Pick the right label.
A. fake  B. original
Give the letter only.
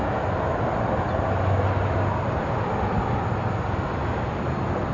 B